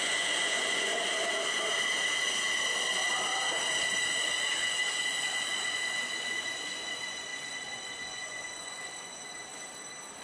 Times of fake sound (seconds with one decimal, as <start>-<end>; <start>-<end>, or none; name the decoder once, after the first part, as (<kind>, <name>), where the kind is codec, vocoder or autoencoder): 0.0-1.1 (vocoder, Vocos); 4.2-9.5